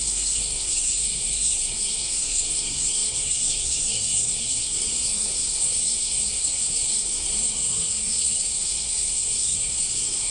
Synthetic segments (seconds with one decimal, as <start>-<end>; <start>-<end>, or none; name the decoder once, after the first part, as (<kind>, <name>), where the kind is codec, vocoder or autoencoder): 0.0-10.3 (codec, SNAC)